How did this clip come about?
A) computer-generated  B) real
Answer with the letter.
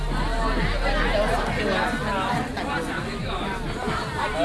B